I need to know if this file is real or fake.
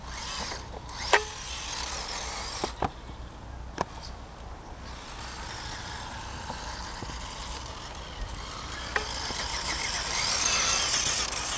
real